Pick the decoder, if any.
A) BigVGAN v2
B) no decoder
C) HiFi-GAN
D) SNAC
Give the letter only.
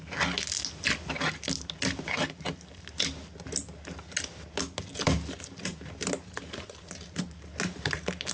B